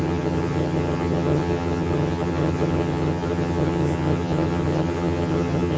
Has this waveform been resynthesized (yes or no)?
yes